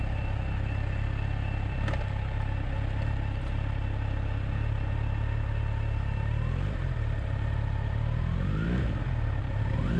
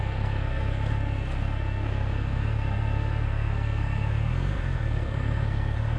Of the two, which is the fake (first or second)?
second